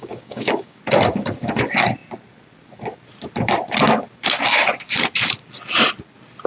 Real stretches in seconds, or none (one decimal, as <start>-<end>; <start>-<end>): 0.8-6.5

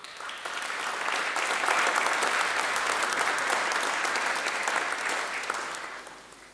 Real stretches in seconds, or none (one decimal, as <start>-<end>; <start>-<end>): 0.0-6.5

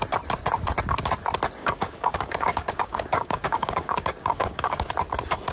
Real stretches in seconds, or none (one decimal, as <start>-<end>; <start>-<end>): 0.0-1.6; 4.9-5.5